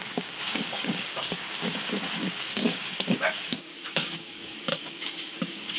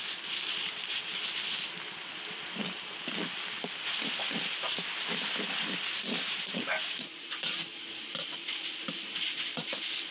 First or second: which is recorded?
second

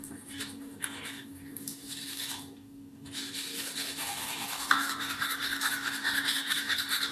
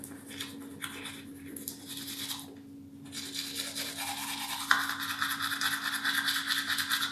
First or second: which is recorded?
second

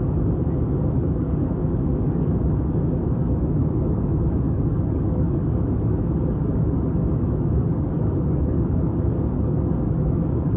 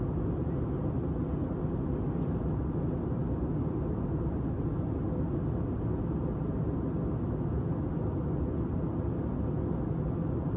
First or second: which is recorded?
second